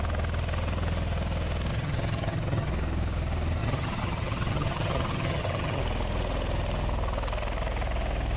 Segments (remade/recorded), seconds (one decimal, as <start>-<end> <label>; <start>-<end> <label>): 0.0-1.7 recorded; 1.7-2.7 remade; 2.7-3.6 recorded; 3.6-5.8 remade; 5.8-8.4 recorded